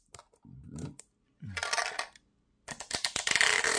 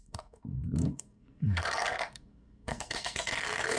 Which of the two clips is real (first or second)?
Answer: first